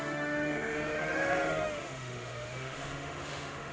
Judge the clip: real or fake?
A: fake